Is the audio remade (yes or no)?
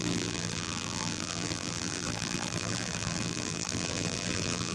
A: yes